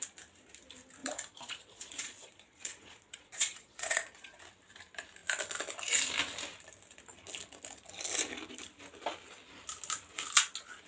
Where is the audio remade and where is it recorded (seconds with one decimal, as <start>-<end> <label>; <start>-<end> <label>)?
0.0-1.0 recorded; 1.0-4.4 remade; 4.4-10.9 recorded